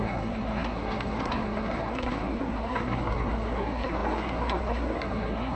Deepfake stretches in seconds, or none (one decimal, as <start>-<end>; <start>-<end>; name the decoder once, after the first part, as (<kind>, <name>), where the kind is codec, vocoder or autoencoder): 0.0-5.6 (codec, SNAC)